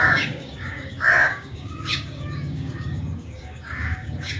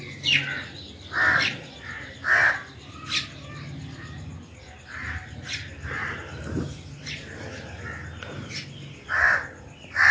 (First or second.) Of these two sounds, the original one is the second